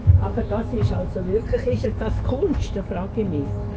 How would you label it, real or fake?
fake